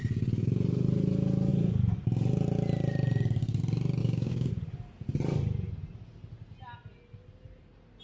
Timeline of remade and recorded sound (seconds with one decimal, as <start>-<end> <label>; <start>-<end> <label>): 0.0-4.0 recorded; 4.0-4.5 remade; 4.5-8.0 recorded